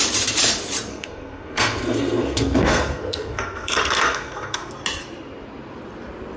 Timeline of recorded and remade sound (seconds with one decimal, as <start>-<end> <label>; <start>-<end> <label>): 0.0-0.9 recorded; 0.9-4.7 remade; 4.7-6.4 recorded